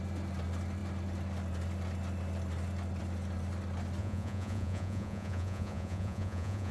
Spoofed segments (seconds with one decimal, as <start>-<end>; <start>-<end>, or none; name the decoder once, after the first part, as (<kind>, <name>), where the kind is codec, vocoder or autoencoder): 4.0-6.7 (vocoder, Vocos)